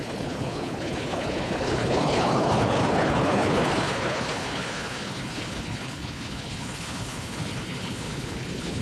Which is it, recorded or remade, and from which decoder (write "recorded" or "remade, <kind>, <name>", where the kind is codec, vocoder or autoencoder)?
remade, codec, HILCodec